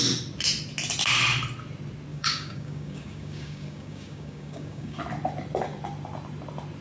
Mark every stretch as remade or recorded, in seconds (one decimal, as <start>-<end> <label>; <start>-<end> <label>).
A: 0.0-2.1 recorded; 2.1-5.0 remade; 5.0-6.8 recorded